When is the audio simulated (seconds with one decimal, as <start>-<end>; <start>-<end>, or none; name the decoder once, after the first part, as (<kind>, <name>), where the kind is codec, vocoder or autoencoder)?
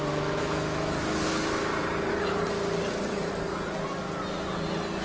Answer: 0.0-1.7 (autoencoder, DAC-VAE)